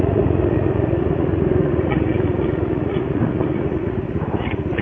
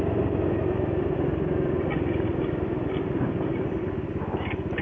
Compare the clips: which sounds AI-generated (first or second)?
first